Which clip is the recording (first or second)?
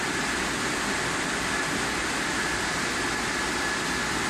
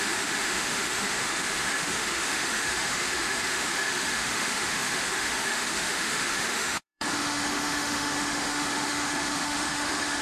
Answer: first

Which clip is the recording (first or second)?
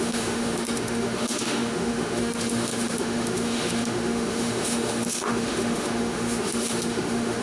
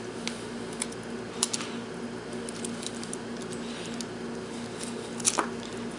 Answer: second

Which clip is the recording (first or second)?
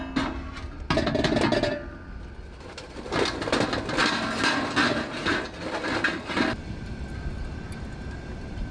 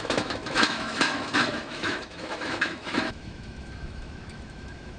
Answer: first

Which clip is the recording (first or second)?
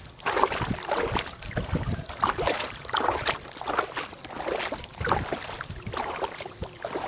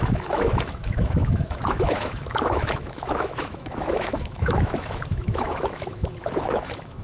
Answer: first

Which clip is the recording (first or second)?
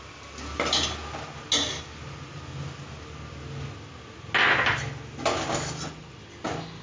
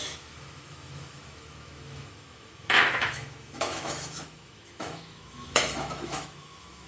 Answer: first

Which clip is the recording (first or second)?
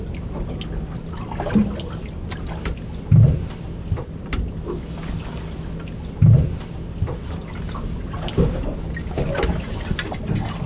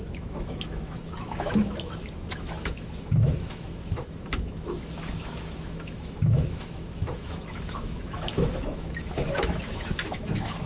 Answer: first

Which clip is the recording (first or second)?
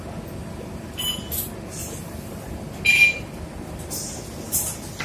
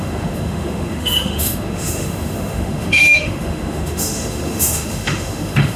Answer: first